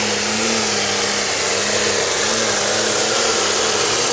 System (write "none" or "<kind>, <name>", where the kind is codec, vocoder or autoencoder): none